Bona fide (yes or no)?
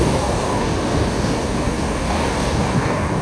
no